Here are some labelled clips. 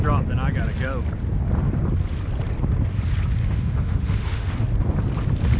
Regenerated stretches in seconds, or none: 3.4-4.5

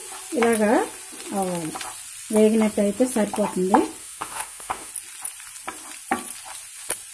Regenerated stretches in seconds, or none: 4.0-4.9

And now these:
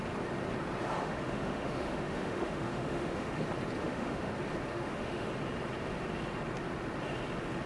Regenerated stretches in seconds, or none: 1.0-3.4; 3.8-4.3; 4.7-5.3